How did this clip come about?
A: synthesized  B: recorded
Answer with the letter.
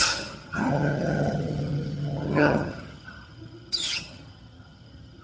A